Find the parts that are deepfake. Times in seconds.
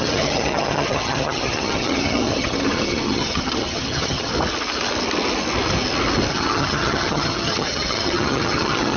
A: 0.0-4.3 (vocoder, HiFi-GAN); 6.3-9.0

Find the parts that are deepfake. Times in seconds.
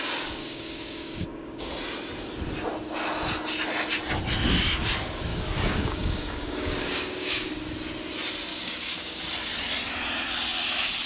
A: 0.4-1.7 (codec, DAC); 5.3-7.5; 8.5-9.2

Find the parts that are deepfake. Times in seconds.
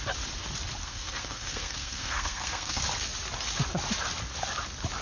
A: 0.8-2.8 (codec, SNAC)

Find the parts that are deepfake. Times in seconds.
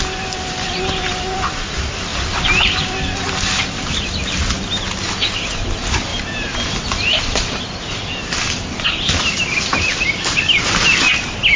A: none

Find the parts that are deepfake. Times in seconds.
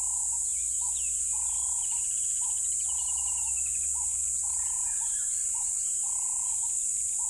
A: none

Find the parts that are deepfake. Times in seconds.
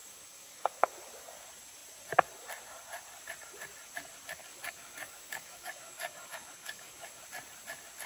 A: 0.0-0.9 (codec, DAC); 4.4-7.2